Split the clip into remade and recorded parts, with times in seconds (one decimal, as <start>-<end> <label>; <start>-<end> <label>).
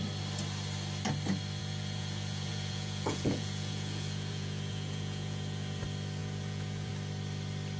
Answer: 0.0-1.6 recorded; 1.6-5.8 remade; 5.8-6.2 recorded; 6.2-6.9 remade; 6.9-7.8 recorded